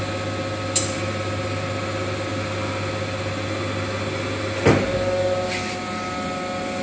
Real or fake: real